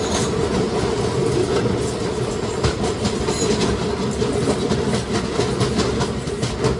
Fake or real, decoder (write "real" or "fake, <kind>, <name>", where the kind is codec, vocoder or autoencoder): real